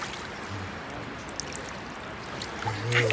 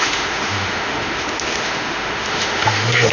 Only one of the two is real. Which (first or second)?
first